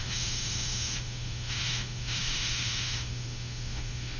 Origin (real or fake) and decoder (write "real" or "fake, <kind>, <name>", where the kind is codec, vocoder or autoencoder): fake, autoencoder, DAC-VAE